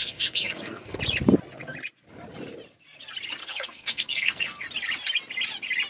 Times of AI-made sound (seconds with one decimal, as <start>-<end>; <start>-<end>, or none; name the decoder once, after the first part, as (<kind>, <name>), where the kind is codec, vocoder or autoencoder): 0.0-1.0 (codec, SNAC); 3.4-4.6